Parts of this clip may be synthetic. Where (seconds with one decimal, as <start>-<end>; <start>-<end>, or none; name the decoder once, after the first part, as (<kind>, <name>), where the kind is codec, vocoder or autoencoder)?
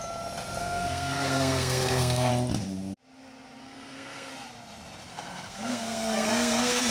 0.6-2.3 (codec, SNAC); 3.6-4.3; 5.1-6.9